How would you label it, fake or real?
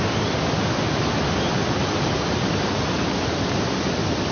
real